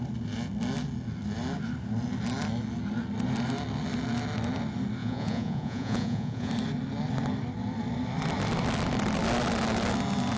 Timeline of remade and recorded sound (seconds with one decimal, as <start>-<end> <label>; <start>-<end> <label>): 0.0-5.0 recorded; 5.0-6.5 remade; 6.5-10.4 recorded